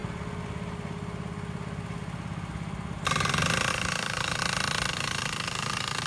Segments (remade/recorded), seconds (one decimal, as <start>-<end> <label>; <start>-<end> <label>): 0.0-3.7 recorded; 3.7-4.4 remade; 4.4-4.9 recorded; 4.9-6.1 remade